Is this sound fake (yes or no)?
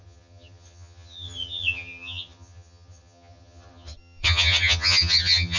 yes